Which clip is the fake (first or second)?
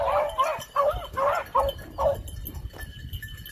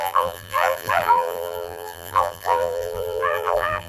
second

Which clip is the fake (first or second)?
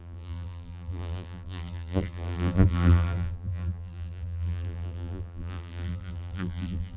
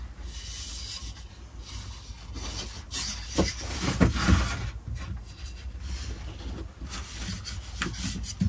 first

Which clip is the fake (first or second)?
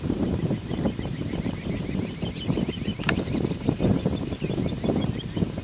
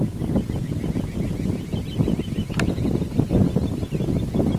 first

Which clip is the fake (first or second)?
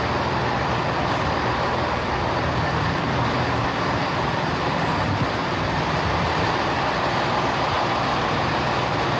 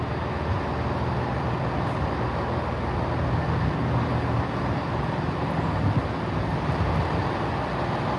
first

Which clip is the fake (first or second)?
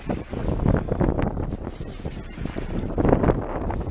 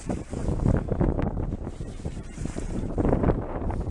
second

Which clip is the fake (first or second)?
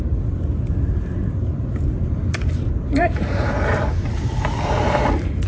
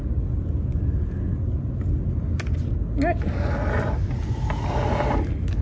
first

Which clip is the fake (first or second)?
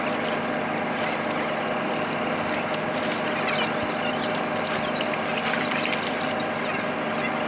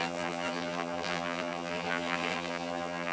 second